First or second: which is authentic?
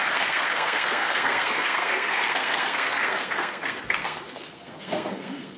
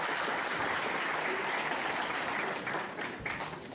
second